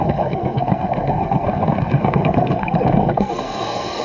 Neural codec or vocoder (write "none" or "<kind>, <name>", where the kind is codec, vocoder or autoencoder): codec, SNAC